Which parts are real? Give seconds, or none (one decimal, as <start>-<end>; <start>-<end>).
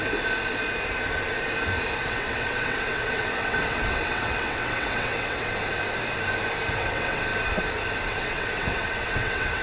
0.0-2.0; 5.5-6.7; 7.3-8.1